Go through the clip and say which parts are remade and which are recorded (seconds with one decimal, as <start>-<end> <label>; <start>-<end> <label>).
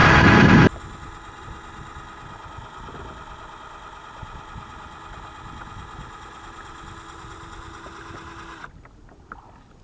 0.0-9.8 recorded